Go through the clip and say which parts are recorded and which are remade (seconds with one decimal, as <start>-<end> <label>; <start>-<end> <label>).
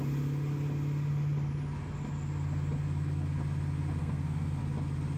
0.0-4.0 recorded; 4.0-4.6 remade; 4.6-5.2 recorded